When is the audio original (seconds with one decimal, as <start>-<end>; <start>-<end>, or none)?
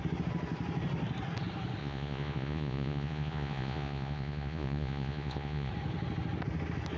0.0-1.8; 5.7-7.0